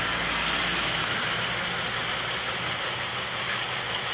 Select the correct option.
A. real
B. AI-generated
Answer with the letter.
A